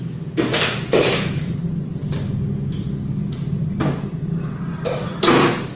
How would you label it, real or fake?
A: real